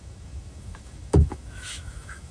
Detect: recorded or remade remade